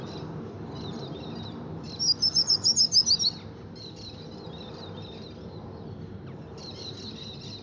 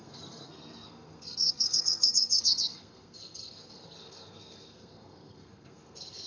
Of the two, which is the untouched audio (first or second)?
first